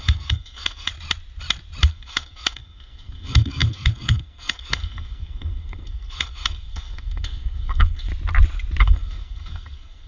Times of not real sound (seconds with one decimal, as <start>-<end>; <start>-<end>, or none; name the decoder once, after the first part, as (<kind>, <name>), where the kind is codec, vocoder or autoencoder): 0.0-0.9 (codec, SNAC); 1.9-8.1; 8.8-10.1